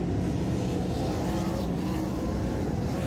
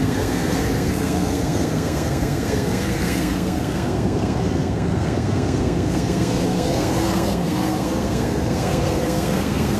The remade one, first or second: second